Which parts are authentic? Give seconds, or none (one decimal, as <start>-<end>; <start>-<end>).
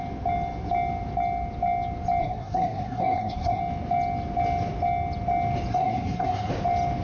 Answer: 0.0-2.2; 3.6-5.7; 6.5-7.0